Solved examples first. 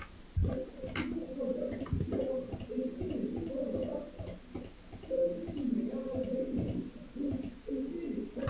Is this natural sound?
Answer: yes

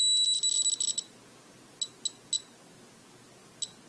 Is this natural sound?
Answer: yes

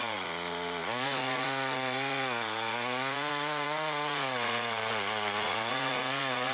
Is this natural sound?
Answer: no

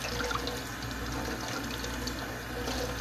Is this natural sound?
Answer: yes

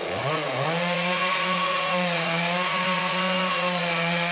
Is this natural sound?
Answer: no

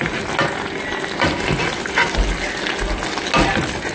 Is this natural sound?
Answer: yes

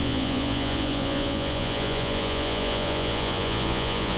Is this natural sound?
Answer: no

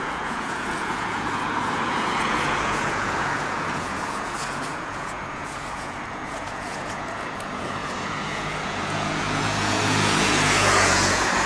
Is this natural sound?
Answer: no